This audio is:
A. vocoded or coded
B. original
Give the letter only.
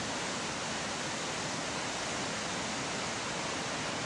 B